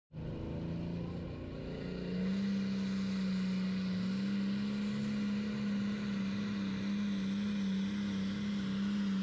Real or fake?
real